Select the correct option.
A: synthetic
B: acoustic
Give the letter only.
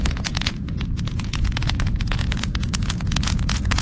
A